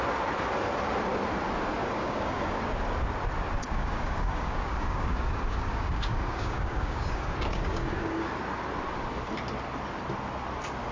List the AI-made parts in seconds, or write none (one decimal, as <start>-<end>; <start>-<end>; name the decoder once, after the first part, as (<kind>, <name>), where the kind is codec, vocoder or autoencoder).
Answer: 1.8-2.6 (codec, DAC); 3.6-8.3